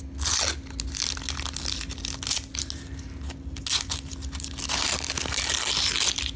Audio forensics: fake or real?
real